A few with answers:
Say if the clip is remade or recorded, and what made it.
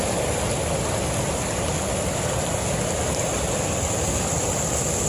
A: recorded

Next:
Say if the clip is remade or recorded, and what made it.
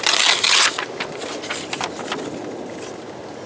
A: recorded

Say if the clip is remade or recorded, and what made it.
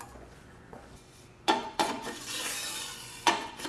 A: remade, vocoder, Vocos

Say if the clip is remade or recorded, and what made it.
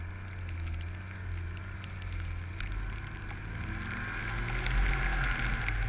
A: recorded